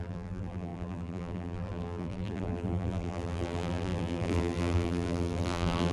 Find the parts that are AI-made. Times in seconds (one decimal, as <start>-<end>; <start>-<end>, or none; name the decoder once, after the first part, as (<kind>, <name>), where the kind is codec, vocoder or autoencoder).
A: 0.0-5.9 (vocoder, BigVGAN v2)